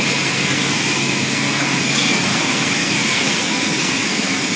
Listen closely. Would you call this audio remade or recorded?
remade